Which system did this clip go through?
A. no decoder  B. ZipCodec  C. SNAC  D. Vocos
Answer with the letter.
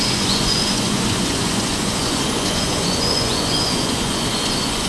D